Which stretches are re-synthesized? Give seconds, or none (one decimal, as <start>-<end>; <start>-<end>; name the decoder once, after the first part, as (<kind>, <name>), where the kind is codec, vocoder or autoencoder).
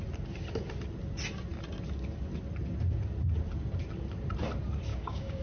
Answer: 4.9-5.4 (codec, DAC)